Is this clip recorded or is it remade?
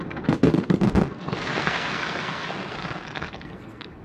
remade